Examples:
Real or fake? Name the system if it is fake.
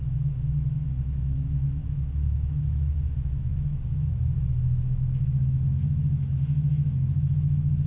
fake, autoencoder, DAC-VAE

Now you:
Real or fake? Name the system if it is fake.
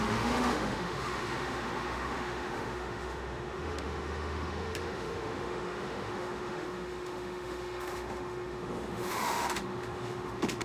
fake, autoencoder, DAC-VAE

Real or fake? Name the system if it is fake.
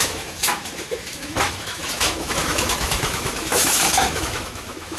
fake, autoencoder, DAC-VAE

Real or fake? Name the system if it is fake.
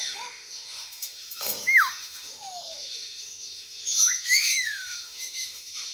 fake, autoencoder, DAC-VAE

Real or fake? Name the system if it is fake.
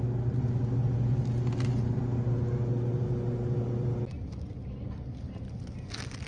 real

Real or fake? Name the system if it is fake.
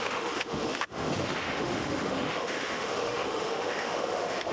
fake, autoencoder, DAC-VAE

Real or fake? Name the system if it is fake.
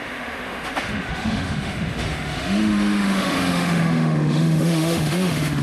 fake, autoencoder, DAC-VAE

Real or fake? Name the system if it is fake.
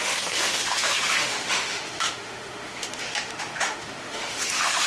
fake, autoencoder, DAC-VAE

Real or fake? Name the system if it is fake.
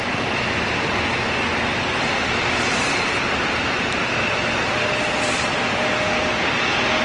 real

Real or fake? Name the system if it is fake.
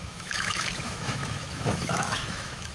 fake, autoencoder, DAC-VAE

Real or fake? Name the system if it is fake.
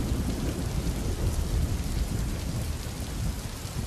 real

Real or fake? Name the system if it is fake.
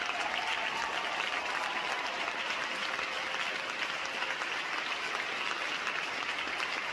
real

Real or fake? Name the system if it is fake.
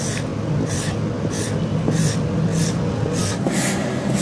real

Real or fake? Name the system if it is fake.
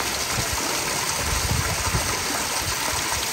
real